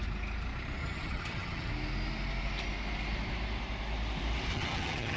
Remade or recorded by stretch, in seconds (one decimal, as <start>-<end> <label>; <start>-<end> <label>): 0.0-0.8 recorded; 0.8-1.7 remade; 1.7-4.5 recorded; 4.5-5.2 remade